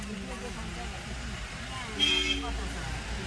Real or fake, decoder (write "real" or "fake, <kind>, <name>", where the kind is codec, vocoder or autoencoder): real